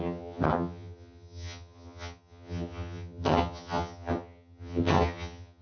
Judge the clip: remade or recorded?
remade